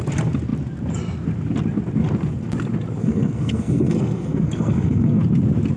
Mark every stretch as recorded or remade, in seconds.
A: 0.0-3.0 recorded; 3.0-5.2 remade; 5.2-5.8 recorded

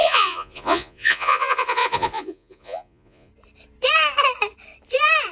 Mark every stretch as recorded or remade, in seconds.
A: 0.0-3.3 remade; 3.3-5.3 recorded